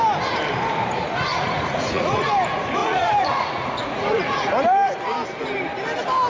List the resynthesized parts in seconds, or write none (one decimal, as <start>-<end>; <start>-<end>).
1.3-2.3; 2.8-4.5